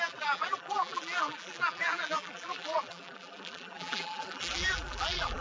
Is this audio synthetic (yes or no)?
yes